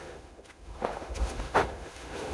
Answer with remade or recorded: remade